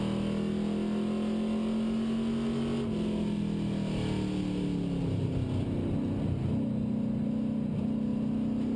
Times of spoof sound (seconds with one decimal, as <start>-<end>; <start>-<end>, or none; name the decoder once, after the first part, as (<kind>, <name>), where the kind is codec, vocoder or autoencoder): none